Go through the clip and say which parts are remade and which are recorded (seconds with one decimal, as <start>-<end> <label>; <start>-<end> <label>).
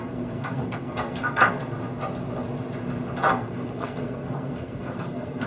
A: 0.0-1.6 remade; 1.6-3.3 recorded; 3.3-5.5 remade